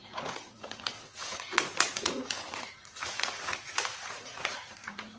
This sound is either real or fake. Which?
fake